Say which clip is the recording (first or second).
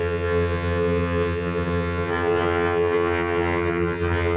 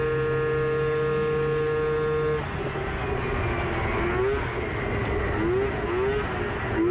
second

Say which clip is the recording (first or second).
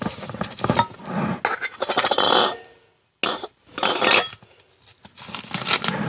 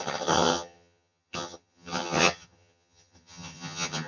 first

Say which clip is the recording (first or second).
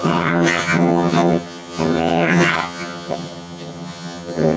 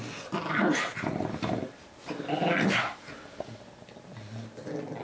second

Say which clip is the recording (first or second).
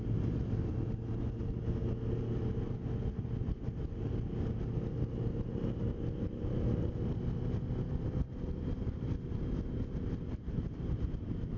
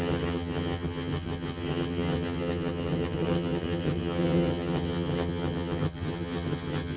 first